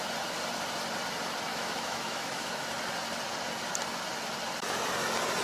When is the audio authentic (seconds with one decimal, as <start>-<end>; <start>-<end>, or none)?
0.0-1.5; 2.8-5.4